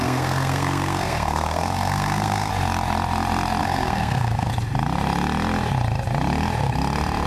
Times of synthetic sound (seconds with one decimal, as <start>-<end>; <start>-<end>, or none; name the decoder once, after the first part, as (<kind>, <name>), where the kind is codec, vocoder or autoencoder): 0.0-2.5 (codec, SNAC); 3.6-4.5